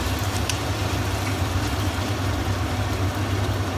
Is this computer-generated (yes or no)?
yes